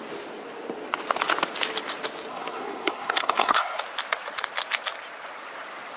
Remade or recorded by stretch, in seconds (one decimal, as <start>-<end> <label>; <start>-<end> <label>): 0.0-2.3 recorded; 2.3-3.8 remade; 3.8-6.0 recorded